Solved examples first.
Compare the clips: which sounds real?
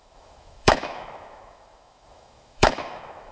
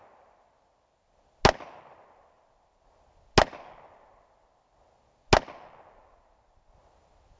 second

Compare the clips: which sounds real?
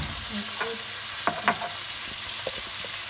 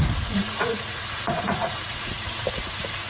first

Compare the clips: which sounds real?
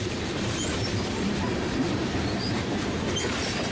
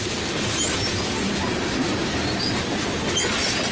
second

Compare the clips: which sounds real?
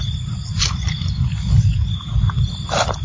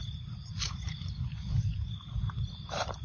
first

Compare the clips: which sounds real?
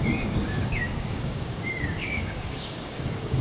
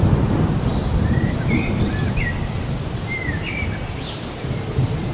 second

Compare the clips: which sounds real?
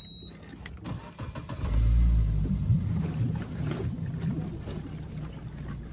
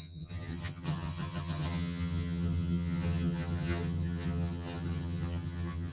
first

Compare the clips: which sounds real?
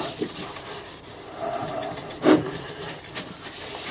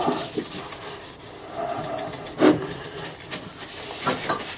second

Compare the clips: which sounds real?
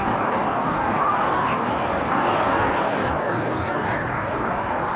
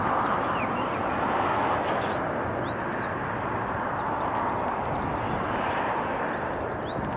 second